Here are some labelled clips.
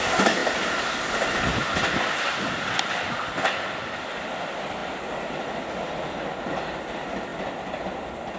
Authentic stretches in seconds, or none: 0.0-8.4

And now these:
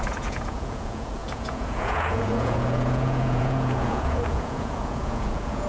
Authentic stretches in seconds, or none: none

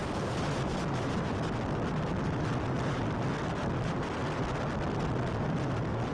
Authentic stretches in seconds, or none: 0.0-6.1

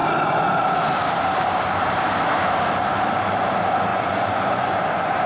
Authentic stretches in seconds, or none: 0.0-3.9; 4.8-5.3